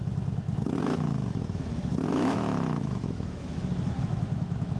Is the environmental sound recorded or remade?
remade